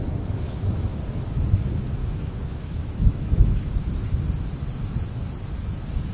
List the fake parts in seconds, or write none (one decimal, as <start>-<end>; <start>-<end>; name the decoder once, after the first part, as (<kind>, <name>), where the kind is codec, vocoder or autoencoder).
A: 0.0-1.0 (autoencoder, DAC-VAE); 2.0-3.6